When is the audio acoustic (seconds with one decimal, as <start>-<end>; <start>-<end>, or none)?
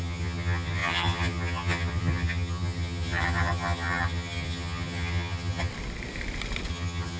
5.7-6.7